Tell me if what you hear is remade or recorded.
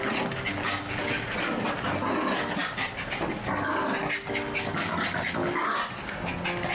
recorded